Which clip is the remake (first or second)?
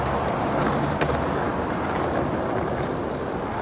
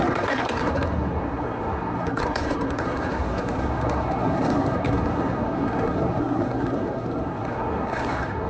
second